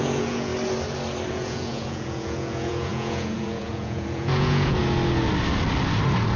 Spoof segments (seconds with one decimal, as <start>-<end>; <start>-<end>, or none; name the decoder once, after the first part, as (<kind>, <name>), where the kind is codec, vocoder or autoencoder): 0.0-0.5 (vocoder, Vocos); 1.3-4.8